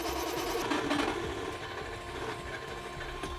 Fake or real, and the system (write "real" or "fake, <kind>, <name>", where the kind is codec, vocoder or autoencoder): real